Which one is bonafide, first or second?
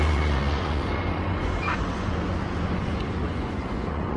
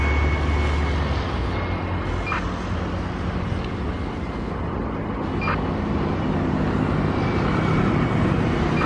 second